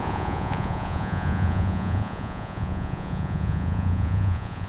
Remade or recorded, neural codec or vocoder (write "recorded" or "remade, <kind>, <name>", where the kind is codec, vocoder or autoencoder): remade, vocoder, Vocos